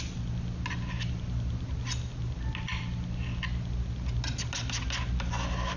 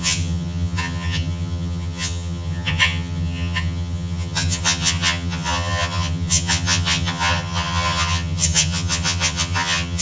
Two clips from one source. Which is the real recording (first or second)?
first